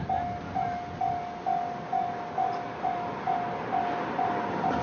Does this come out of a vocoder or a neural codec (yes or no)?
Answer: no